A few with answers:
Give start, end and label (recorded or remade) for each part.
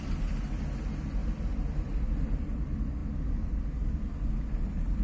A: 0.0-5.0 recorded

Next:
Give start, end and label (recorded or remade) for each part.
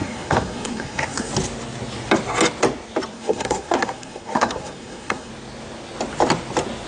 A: 0.0-1.3 remade; 1.3-3.1 recorded; 3.1-5.3 remade; 5.3-6.9 recorded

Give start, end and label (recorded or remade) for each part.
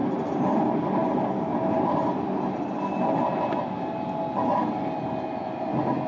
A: 0.0-6.1 recorded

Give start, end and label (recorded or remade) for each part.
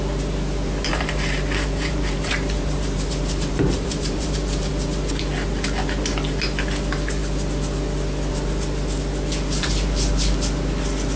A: 0.0-0.9 recorded; 0.9-4.7 remade; 4.7-11.2 recorded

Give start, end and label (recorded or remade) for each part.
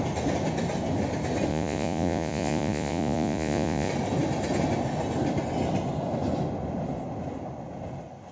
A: 0.0-1.5 recorded; 1.5-3.9 remade; 3.9-8.3 recorded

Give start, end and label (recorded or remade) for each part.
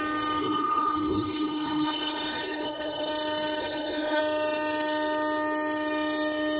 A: 0.0-0.4 recorded; 0.4-3.1 remade; 3.1-3.6 recorded; 3.6-4.2 remade; 4.2-6.6 recorded